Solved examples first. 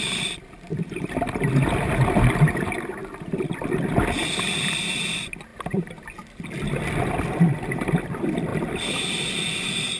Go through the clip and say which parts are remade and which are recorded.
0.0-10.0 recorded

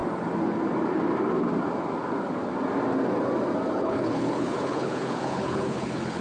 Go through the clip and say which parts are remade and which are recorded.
0.0-3.7 recorded; 3.7-6.2 remade